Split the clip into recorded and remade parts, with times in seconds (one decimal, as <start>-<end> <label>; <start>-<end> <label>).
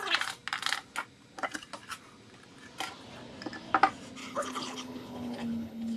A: 0.0-4.2 recorded; 4.2-6.0 remade